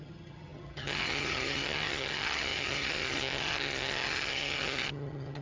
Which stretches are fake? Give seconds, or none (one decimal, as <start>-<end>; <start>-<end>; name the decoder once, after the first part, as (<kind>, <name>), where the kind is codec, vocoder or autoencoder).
0.0-5.4 (vocoder, HiFi-GAN)